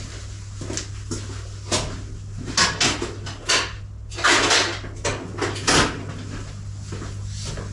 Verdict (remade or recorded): recorded